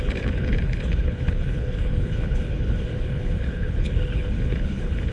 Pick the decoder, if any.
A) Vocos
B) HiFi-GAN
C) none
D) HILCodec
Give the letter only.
D